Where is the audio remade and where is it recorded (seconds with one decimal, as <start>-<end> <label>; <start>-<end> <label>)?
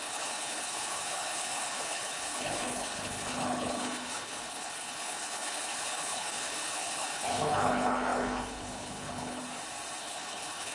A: 0.0-9.4 remade; 9.4-10.0 recorded; 10.0-10.7 remade